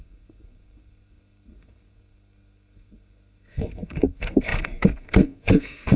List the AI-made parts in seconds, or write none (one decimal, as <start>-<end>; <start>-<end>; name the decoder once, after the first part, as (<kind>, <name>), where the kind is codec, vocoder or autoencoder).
0.0-6.0 (codec, SNAC)